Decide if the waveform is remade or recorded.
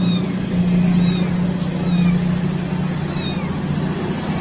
recorded